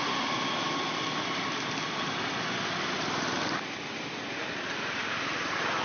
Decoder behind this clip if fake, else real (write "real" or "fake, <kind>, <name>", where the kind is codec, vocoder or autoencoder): real